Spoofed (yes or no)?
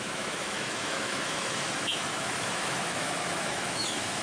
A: yes